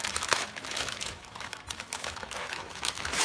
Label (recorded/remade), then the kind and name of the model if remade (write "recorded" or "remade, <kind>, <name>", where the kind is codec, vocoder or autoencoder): remade, autoencoder, DAC-VAE